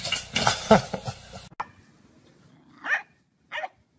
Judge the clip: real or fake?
real